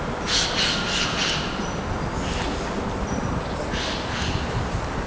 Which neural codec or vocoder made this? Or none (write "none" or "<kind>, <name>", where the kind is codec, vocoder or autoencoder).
none